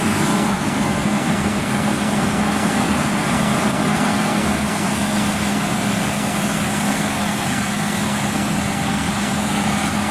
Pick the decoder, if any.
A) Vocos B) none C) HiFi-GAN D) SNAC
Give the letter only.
D